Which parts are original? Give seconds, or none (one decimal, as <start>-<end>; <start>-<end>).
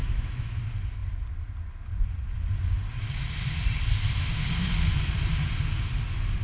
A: 0.6-6.4